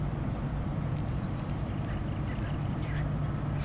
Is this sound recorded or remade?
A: recorded